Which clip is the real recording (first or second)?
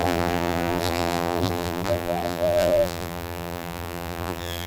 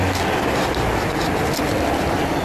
second